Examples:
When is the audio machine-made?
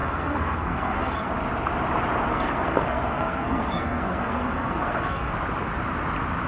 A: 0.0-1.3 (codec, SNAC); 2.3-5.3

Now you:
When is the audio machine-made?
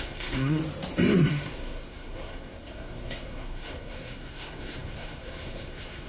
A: 0.0-0.6 (codec, SNAC); 1.3-6.1